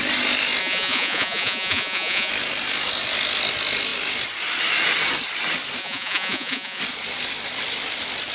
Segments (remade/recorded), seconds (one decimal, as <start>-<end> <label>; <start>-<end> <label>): 0.0-0.6 recorded; 0.6-2.3 remade; 2.3-5.8 recorded; 5.8-6.8 remade; 6.8-8.3 recorded